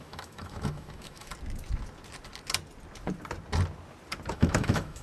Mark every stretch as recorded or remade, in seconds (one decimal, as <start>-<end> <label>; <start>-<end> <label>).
0.0-1.3 remade; 1.3-4.3 recorded; 4.3-5.0 remade